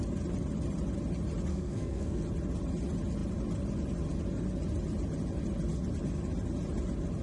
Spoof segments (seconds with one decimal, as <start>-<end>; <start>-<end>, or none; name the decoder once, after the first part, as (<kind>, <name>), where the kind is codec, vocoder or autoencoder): 1.5-2.2 (codec, SNAC)